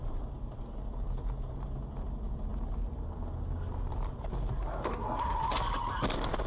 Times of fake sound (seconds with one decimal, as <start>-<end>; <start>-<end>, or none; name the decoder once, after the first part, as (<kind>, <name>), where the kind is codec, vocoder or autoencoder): 4.9-5.4 (codec, SNAC)